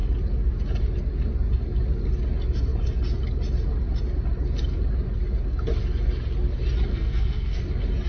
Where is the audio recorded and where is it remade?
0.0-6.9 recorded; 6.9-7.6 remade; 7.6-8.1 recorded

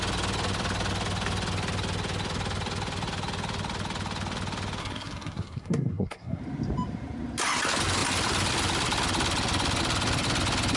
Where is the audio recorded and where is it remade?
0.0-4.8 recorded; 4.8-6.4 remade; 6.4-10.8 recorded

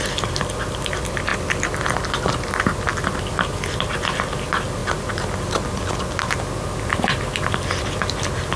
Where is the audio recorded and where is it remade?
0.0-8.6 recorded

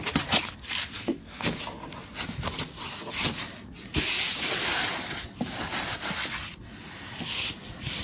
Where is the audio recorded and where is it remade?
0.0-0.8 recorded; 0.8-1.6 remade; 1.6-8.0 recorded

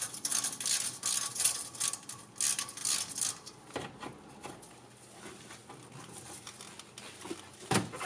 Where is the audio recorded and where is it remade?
0.0-8.1 recorded

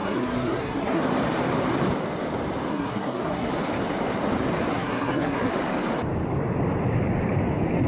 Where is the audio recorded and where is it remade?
0.0-1.0 remade; 1.0-2.7 recorded; 2.7-3.5 remade; 3.5-4.7 recorded; 4.7-5.5 remade; 5.5-7.9 recorded